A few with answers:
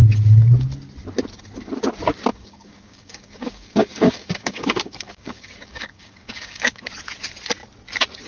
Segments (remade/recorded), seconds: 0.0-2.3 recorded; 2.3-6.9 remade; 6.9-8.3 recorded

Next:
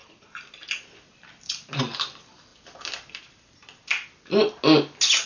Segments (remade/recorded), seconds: 0.0-5.3 recorded

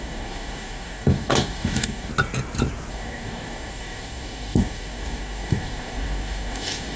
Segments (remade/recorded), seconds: 0.0-2.1 remade; 2.1-2.9 recorded; 2.9-7.0 remade

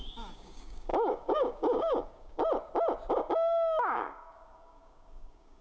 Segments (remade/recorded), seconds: 0.0-2.4 remade; 2.4-3.1 recorded; 3.1-5.6 remade

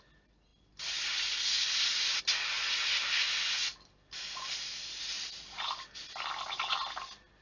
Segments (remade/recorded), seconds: 0.0-7.4 recorded